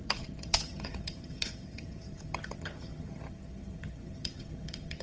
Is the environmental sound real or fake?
fake